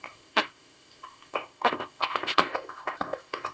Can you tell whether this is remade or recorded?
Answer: remade